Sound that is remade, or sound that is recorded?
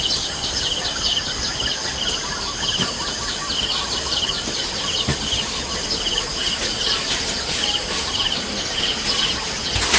recorded